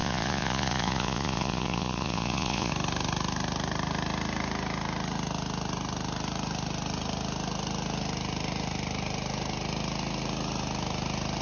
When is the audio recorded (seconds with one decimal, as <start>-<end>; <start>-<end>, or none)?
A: 2.7-11.4